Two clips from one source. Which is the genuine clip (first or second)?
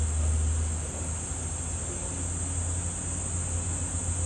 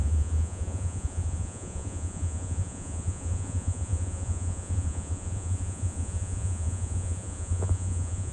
first